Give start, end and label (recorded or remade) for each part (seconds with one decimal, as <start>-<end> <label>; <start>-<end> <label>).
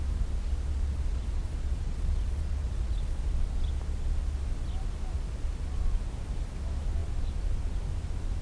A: 0.0-1.1 recorded; 1.1-3.2 remade; 3.2-8.4 recorded